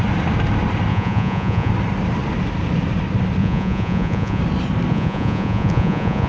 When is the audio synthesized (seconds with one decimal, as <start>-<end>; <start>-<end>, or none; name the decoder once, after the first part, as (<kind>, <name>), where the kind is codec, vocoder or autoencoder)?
0.9-1.7 (vocoder, Vocos); 3.4-4.4; 4.9-6.3

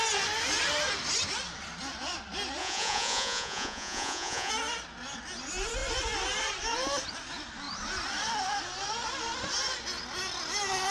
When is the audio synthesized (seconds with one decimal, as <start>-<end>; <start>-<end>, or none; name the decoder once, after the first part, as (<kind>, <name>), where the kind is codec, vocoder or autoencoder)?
2.6-4.5 (vocoder, Vocos)

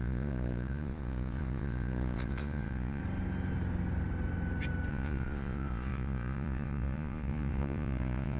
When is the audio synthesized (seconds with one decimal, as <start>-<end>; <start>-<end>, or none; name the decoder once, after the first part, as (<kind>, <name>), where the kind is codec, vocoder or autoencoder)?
0.0-3.0 (vocoder, Vocos); 4.9-8.4

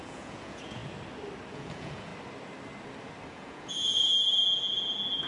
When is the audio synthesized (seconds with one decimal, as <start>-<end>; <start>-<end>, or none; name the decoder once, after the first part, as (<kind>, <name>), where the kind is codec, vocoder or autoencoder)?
0.0-0.8 (vocoder, Vocos); 1.5-2.1; 3.3-4.1

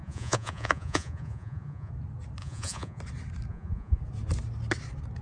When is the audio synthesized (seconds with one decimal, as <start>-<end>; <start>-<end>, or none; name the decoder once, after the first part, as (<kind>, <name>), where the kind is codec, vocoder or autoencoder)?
0.0-1.9 (vocoder, Vocos); 2.4-3.0; 3.5-4.0

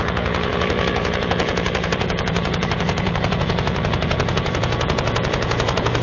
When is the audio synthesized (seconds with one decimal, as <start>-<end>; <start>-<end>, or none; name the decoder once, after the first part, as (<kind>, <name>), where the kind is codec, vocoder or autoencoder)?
0.0-6.0 (vocoder, Vocos)

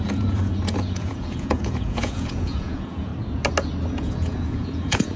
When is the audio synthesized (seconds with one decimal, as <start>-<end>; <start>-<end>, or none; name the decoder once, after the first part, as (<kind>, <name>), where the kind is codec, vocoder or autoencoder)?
0.0-3.1 (vocoder, Vocos); 3.9-5.2